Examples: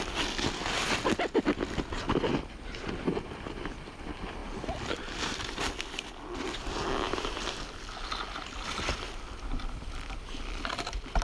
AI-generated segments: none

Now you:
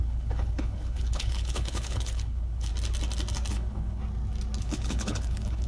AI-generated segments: 0.0-2.7 (codec, HILCodec); 3.5-4.0; 4.6-5.7

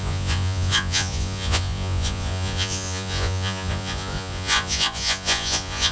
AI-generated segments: 0.0-5.9 (vocoder, Vocos)